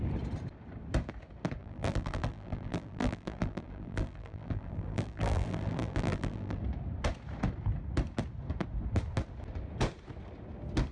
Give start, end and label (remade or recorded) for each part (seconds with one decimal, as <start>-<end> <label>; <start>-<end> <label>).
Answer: 0.0-1.6 recorded; 1.6-6.6 remade; 6.6-10.9 recorded